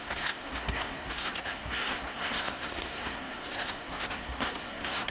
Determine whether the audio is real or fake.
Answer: fake